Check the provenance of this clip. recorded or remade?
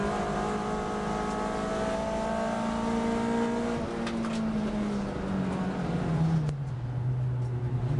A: recorded